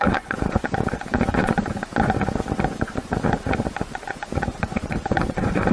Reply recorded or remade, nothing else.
remade